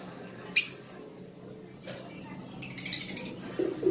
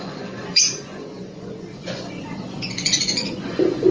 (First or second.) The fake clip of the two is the second